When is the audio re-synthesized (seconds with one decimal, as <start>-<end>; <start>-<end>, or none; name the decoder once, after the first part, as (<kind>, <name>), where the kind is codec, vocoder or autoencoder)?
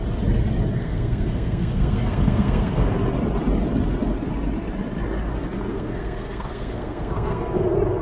0.8-2.9 (codec, SNAC); 5.7-7.6